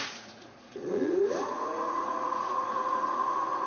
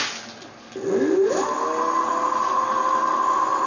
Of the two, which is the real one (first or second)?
second